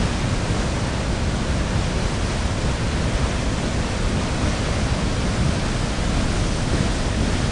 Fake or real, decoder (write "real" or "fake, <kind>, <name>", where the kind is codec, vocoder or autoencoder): real